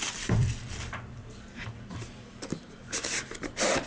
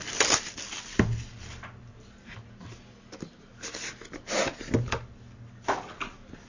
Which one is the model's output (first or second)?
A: first